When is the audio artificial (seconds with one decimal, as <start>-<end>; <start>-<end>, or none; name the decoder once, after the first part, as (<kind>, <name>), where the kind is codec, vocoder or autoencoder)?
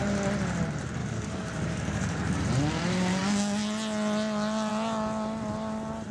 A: 1.0-2.4 (codec, DAC)